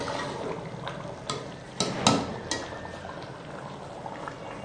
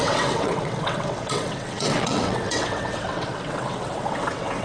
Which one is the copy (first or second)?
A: second